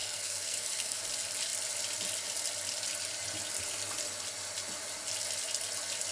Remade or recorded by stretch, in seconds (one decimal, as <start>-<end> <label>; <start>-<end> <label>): 0.0-1.0 remade; 1.0-6.1 recorded